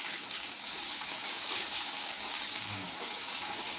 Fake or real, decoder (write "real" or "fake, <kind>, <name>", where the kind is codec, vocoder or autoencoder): fake, codec, DAC